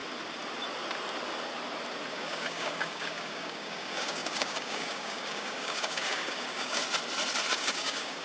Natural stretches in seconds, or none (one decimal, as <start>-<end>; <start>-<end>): 0.0-2.1; 6.8-7.5